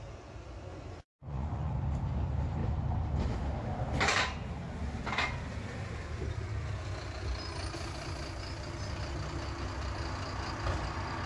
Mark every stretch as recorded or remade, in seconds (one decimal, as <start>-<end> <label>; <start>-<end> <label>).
0.0-0.7 recorded; 0.7-1.7 remade; 1.7-11.3 recorded